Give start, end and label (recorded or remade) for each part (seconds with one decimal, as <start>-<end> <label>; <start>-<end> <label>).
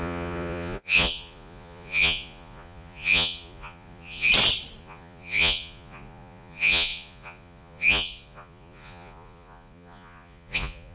0.0-4.3 remade; 4.3-4.8 recorded; 4.8-10.9 remade